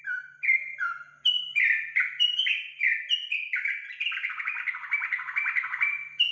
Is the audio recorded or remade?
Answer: recorded